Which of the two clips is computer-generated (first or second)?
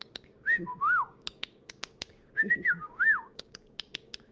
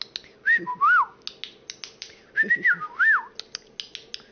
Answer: first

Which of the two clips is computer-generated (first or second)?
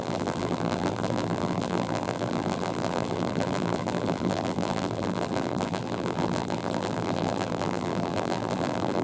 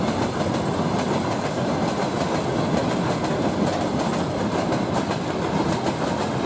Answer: first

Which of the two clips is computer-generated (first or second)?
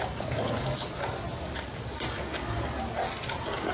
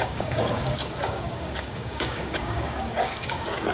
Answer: second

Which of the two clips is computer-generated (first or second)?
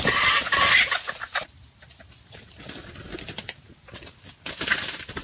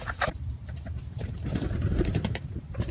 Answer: second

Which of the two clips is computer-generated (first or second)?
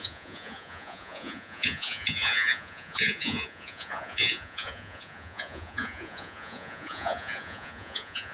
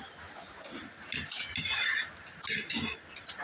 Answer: first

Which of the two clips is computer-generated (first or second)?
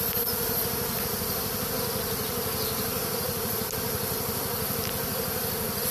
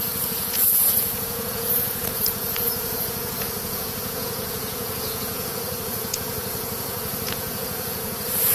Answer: second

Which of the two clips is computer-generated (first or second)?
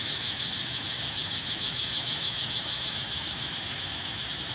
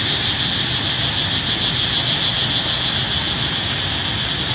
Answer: first